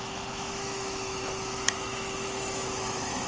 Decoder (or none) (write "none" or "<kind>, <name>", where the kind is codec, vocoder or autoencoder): autoencoder, DAC-VAE